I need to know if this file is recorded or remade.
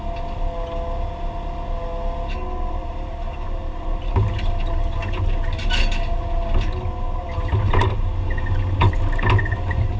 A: recorded